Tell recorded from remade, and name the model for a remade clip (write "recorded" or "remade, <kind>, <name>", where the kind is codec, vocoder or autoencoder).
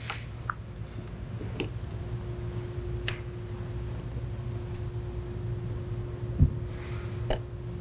recorded